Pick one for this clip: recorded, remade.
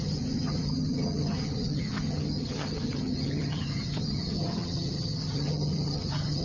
remade